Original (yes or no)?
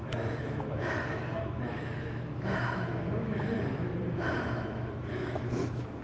no